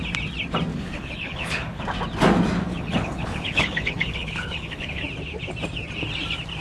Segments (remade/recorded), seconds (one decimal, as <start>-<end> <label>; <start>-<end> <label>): 0.0-0.7 recorded; 0.7-1.8 remade; 1.8-2.7 recorded; 2.7-5.0 remade; 5.0-6.6 recorded